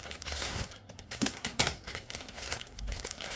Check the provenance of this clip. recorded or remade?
remade